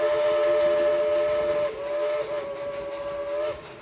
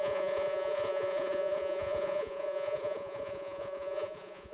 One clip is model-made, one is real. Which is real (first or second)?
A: first